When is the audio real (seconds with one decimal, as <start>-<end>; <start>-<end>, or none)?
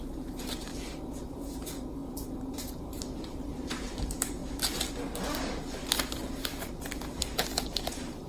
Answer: 0.7-1.2; 4.4-7.9